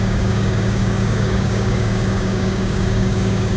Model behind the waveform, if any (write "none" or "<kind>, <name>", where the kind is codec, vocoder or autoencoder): codec, DAC